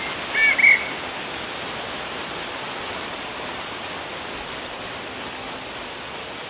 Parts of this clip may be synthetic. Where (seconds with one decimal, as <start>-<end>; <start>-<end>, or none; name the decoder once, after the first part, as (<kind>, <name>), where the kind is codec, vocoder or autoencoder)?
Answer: none

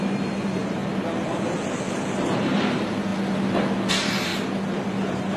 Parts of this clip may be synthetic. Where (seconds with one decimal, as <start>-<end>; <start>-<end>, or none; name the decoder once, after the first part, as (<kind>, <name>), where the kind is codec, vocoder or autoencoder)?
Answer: 0.0-0.8 (vocoder, BigVGAN v2); 2.2-3.1; 3.9-4.3; 4.9-5.4

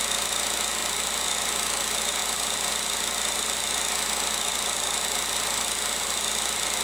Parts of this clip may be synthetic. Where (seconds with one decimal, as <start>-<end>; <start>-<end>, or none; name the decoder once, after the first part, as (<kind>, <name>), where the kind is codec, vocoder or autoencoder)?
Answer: none

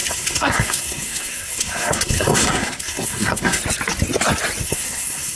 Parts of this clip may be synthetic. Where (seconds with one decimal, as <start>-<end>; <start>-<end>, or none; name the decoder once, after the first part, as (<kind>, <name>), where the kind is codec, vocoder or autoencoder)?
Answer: 0.0-3.6 (codec, SNAC); 4.6-5.4